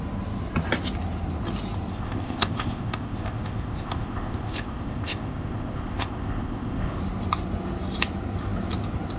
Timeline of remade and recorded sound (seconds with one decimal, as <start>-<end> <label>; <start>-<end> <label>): 0.0-1.9 recorded; 1.9-7.0 remade; 7.0-9.2 recorded